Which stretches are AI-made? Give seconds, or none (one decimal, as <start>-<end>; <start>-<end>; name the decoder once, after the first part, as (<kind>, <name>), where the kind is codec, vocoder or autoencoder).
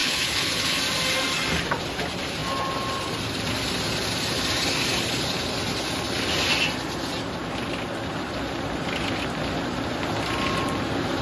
0.0-0.8 (codec, HILCodec)